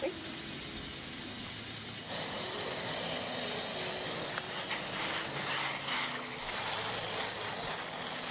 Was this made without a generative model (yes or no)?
yes